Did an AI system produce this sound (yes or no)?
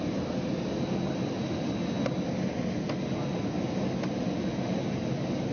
no